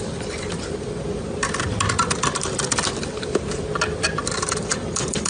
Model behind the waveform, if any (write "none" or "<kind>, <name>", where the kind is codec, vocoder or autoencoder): vocoder, BigVGAN v2